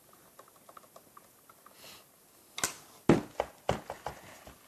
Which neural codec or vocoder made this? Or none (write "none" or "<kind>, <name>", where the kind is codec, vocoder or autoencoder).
none